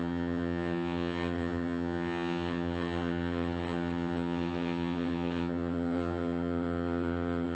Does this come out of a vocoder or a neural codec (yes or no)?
yes